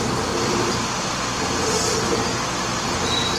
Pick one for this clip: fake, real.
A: real